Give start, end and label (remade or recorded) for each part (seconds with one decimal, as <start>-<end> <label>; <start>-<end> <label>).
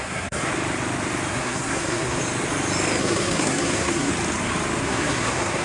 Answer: 0.0-0.5 remade; 0.5-1.3 recorded; 1.3-2.2 remade; 2.2-3.0 recorded; 3.0-4.1 remade; 4.1-4.8 recorded; 4.8-5.6 remade